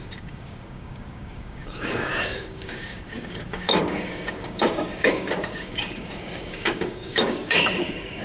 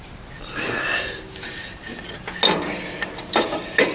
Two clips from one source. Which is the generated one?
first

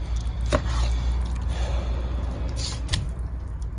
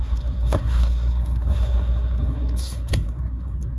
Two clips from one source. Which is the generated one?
second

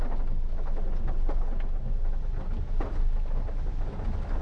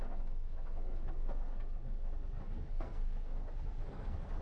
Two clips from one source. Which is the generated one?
second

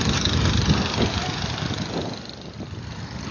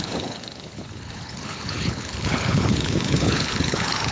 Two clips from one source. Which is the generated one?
second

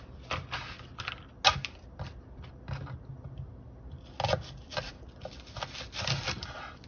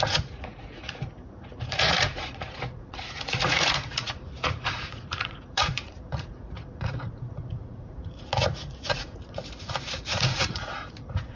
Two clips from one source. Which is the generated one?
second